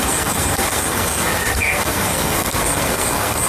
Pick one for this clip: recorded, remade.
remade